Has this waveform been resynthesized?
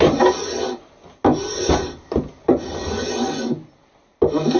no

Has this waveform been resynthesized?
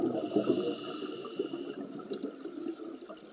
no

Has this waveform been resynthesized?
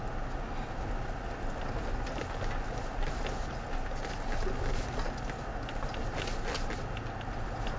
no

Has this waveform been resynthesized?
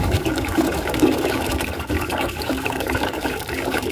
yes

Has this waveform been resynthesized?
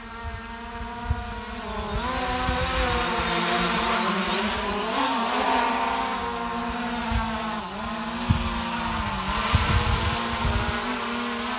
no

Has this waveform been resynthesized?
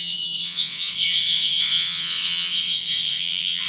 yes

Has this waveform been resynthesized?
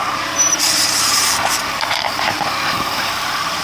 yes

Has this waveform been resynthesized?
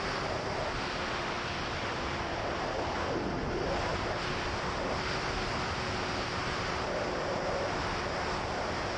no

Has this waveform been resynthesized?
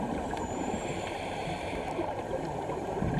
yes